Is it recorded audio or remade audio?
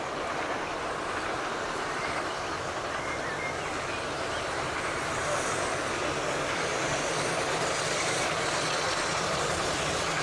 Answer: recorded